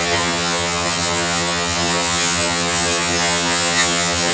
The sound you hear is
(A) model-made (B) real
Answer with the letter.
A